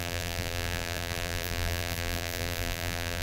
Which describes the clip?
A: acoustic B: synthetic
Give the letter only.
B